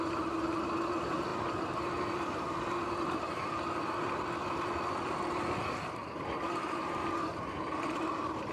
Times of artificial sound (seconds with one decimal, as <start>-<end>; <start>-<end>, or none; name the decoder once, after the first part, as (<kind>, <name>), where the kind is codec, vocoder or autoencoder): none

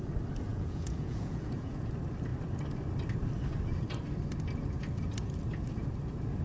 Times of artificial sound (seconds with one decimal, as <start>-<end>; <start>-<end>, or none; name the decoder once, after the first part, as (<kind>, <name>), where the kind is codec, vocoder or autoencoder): 0.5-1.9 (vocoder, Vocos)

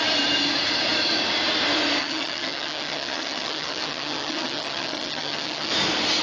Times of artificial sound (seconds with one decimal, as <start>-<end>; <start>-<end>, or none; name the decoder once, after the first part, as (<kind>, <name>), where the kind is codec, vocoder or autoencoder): 2.0-5.7 (vocoder, HiFi-GAN)

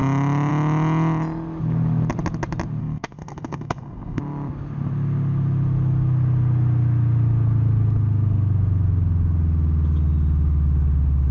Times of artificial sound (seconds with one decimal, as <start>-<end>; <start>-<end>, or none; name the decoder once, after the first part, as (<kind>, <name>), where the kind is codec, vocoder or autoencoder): 2.8-4.2 (codec, SNAC)

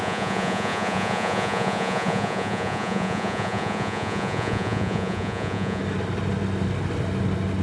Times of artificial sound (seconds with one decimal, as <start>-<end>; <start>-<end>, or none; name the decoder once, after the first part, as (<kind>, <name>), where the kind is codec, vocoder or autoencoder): 0.0-5.8 (vocoder, Vocos)

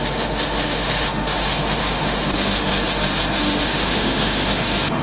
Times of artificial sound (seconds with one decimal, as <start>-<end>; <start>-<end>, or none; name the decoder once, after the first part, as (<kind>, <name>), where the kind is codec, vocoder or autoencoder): 0.0-2.7 (autoencoder, DAC-VAE); 3.4-5.0

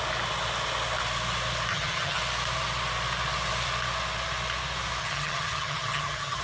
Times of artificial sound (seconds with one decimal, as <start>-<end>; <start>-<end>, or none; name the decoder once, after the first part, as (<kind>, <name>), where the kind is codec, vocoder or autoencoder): 1.7-2.2 (vocoder, HiFi-GAN); 5.0-6.4